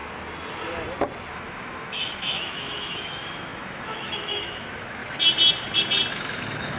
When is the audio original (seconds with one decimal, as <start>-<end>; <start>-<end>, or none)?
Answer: 0.0-1.3; 5.0-6.1